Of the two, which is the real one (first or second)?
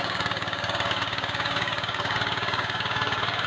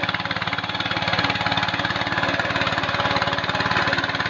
second